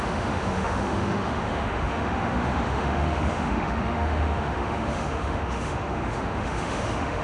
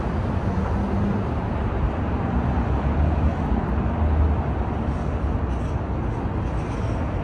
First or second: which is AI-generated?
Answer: first